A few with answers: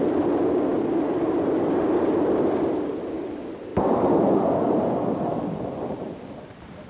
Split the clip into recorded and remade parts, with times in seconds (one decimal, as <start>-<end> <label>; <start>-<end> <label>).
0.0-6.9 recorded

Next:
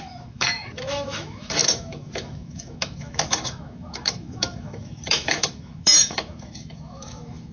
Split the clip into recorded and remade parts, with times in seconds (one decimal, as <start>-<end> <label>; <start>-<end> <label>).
0.0-7.5 remade

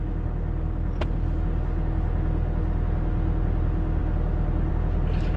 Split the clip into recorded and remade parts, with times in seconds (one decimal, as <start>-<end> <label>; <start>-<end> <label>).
0.0-5.4 recorded